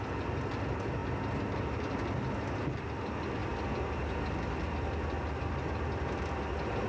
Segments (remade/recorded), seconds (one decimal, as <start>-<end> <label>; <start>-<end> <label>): 0.0-6.9 recorded